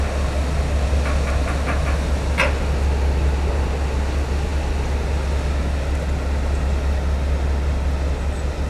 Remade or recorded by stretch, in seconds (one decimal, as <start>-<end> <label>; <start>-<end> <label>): 0.0-8.7 recorded